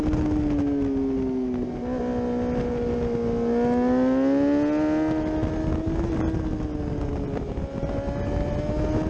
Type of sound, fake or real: real